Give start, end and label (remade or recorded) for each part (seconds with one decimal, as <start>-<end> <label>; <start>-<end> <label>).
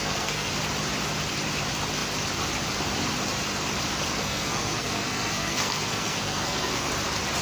0.0-0.5 remade; 0.5-4.2 recorded; 4.2-6.9 remade; 6.9-7.4 recorded